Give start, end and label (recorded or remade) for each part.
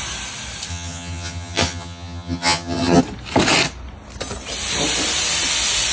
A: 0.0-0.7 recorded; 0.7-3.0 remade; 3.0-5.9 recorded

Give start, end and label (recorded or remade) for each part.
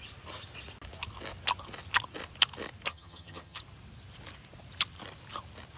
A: 0.0-2.9 recorded; 2.9-3.6 remade; 3.6-5.8 recorded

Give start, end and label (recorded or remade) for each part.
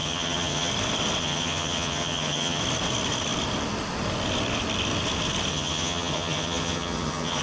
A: 0.0-0.7 remade; 0.7-1.2 recorded; 1.2-2.6 remade; 2.6-5.5 recorded; 5.5-7.4 remade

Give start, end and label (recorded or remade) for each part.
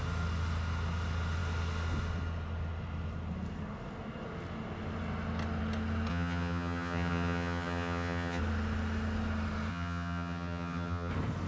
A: 0.0-6.1 recorded; 6.1-8.4 remade; 8.4-9.7 recorded; 9.7-11.1 remade; 11.1-11.5 recorded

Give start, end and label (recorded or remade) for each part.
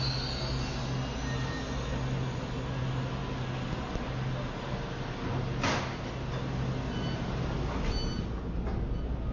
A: 0.0-9.3 recorded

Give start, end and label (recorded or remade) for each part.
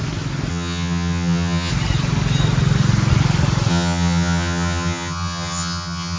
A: 0.0-0.5 recorded; 0.5-1.7 remade; 1.7-3.7 recorded; 3.7-6.2 remade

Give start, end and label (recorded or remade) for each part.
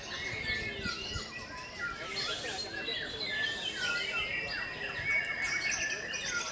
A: 0.0-6.5 recorded